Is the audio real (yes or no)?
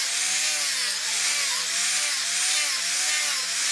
yes